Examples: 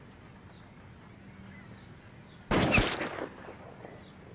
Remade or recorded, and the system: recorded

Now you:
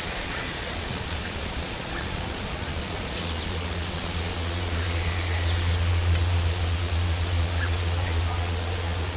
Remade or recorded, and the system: remade, vocoder, Vocos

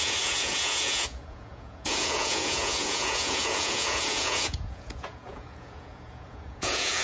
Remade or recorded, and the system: remade, vocoder, Vocos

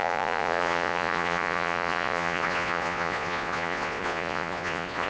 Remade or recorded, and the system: remade, vocoder, Vocos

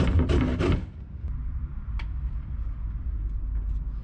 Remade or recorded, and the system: recorded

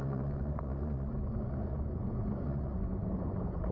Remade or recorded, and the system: remade, vocoder, Vocos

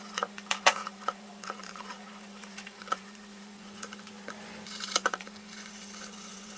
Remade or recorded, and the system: remade, vocoder, Vocos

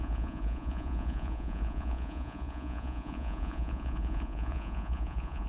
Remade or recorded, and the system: remade, vocoder, Vocos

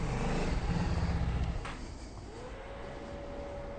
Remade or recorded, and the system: recorded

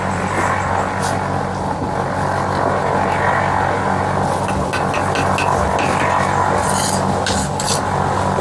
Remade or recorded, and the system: recorded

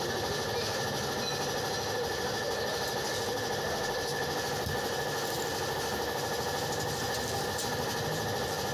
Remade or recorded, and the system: recorded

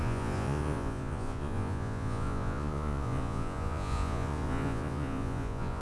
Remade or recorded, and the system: remade, vocoder, Vocos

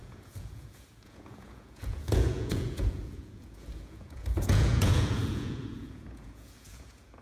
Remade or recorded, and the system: remade, vocoder, Vocos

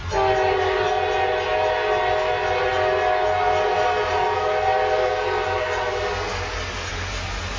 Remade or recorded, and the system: recorded